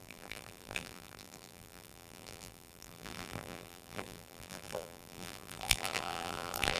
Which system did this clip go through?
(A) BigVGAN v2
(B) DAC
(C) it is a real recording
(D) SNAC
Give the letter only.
A